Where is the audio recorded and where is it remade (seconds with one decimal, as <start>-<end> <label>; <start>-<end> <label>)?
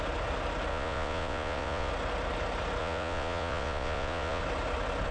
0.0-0.7 recorded; 0.7-1.9 remade; 1.9-2.8 recorded; 2.8-4.4 remade; 4.4-5.1 recorded